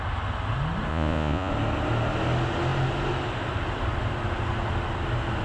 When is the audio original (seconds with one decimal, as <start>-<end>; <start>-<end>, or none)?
0.0-0.9; 1.5-5.4